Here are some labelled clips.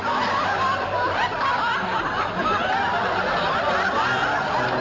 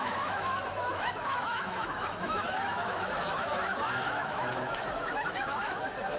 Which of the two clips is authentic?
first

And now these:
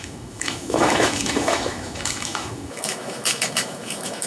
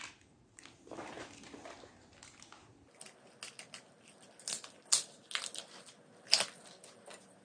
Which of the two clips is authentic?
second